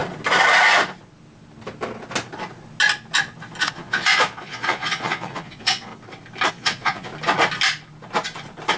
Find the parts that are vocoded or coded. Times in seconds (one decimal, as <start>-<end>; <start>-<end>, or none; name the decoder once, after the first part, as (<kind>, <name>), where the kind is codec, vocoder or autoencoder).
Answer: 3.6-5.9 (vocoder, Vocos); 6.5-7.1